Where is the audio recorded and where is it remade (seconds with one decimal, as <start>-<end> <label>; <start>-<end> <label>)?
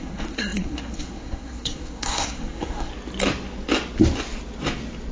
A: 0.0-2.9 remade; 2.9-5.1 recorded